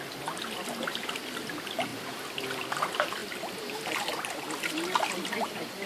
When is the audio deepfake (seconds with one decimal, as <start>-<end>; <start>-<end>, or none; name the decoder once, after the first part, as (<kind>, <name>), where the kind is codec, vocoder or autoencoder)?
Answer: none